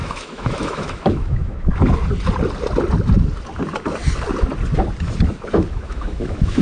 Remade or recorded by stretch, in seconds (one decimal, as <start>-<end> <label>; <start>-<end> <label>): 0.0-1.7 remade; 1.7-5.7 recorded; 5.7-6.6 remade